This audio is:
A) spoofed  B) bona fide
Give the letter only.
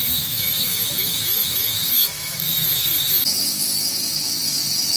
A